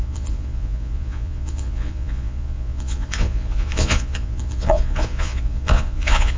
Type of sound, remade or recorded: remade